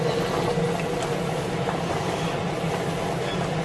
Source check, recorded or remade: recorded